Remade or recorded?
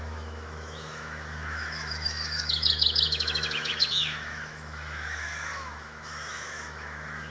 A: remade